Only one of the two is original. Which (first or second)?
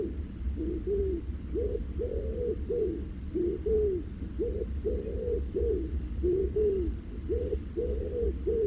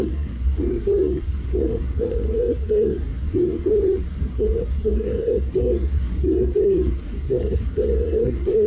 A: first